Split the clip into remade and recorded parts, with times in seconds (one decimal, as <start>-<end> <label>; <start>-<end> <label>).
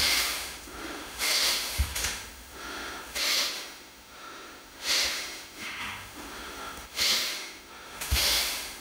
0.0-8.8 remade